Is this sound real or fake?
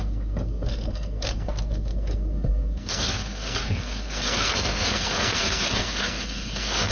fake